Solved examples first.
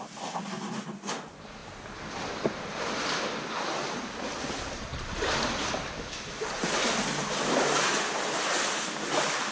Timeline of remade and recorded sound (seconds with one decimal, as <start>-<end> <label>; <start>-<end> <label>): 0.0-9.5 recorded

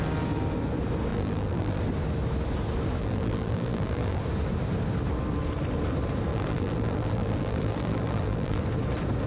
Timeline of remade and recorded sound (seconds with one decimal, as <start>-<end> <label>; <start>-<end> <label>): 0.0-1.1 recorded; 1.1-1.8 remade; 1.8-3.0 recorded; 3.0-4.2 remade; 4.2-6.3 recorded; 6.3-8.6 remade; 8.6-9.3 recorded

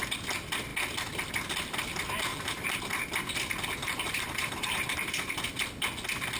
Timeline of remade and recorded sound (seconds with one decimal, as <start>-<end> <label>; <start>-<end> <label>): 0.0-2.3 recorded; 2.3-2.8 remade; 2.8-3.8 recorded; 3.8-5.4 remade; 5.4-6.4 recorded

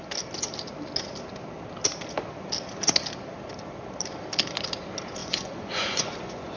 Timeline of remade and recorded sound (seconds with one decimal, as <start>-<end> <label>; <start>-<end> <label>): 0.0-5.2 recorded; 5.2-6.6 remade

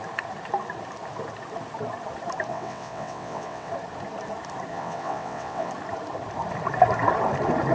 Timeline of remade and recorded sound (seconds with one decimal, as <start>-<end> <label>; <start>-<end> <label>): 0.0-2.5 recorded; 2.5-3.7 remade; 3.7-4.7 recorded; 4.7-5.7 remade; 5.7-7.7 recorded

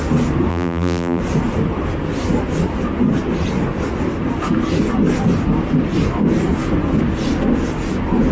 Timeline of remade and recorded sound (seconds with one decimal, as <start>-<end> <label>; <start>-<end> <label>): 0.0-0.5 recorded; 0.5-1.2 remade; 1.2-8.3 recorded